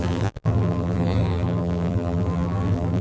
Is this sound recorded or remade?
remade